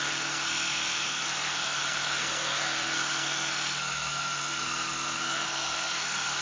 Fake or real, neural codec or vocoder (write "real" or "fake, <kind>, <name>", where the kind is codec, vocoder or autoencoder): fake, codec, SNAC